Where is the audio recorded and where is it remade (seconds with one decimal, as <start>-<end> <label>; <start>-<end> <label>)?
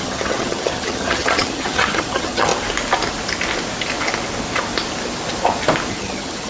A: 0.0-2.5 remade; 2.5-5.9 recorded; 5.9-6.5 remade